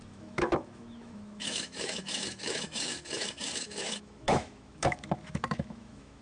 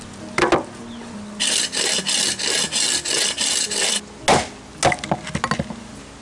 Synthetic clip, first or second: first